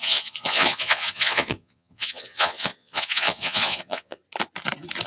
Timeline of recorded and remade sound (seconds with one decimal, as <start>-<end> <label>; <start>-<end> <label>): 0.0-4.2 remade; 4.2-5.1 recorded